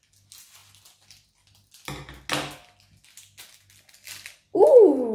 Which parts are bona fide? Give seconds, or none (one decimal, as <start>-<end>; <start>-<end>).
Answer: 0.0-5.1